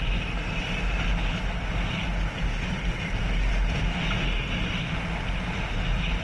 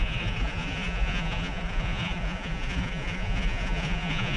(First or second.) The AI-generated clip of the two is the second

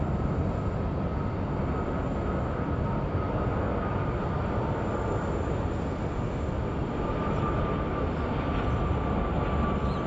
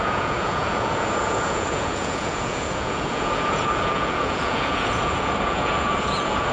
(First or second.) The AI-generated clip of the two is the second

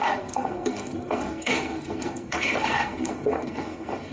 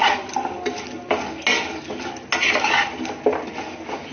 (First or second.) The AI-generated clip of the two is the first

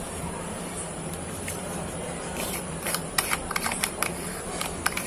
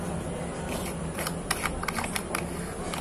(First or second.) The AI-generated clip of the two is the first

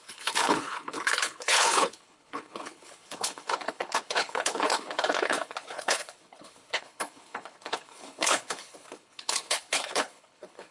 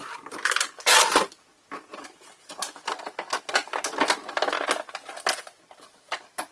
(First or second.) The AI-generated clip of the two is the first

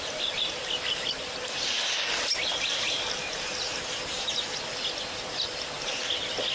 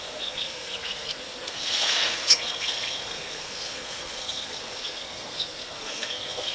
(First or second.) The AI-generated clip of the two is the second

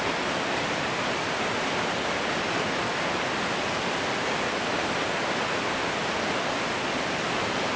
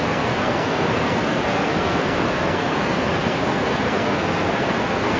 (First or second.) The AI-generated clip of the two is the second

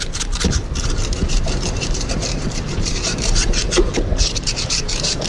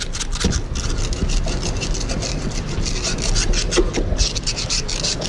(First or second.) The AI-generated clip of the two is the first